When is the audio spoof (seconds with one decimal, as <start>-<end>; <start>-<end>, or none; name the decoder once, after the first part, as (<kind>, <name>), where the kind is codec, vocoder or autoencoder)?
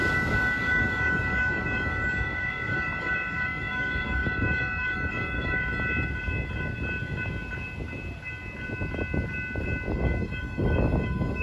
0.0-5.7 (codec, DAC); 9.9-11.4